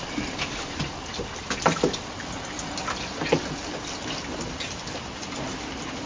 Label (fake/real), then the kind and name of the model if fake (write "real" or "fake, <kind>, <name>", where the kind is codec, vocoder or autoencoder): real